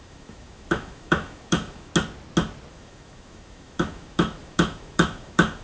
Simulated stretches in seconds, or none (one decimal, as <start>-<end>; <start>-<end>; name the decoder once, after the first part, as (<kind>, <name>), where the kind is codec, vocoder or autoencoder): 0.0-1.9 (autoencoder, DAC-VAE); 2.7-5.6